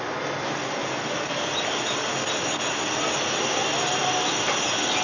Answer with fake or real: real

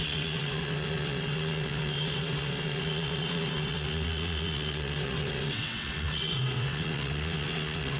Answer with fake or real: fake